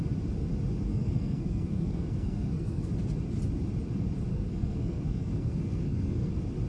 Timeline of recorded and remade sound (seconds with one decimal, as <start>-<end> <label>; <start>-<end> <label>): 0.0-0.9 recorded; 0.9-2.9 remade; 2.9-4.3 recorded; 4.3-6.3 remade; 6.3-6.7 recorded

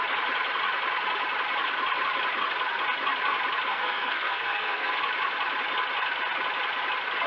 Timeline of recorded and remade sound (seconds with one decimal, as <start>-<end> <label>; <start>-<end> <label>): 0.0-3.7 recorded; 3.7-5.0 remade; 5.0-7.3 recorded